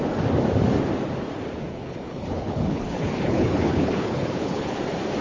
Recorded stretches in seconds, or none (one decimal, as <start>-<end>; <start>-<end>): 0.0-1.7; 4.8-5.2